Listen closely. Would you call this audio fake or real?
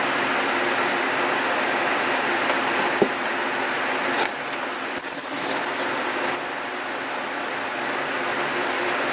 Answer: real